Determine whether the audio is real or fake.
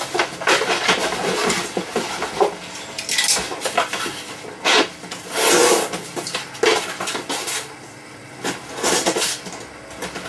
real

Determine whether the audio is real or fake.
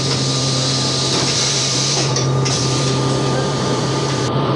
fake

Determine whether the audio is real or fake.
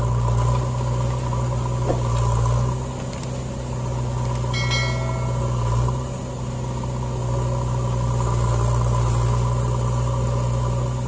real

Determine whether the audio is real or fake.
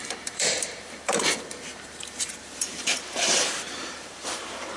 fake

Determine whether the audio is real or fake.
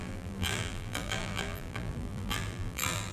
fake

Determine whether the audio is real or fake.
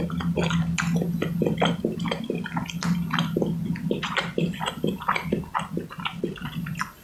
real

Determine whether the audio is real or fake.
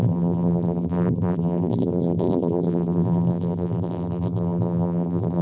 fake